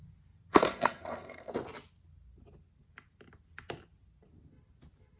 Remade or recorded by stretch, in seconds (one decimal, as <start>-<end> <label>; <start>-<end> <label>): 0.0-0.5 recorded; 0.5-1.5 remade; 1.5-5.2 recorded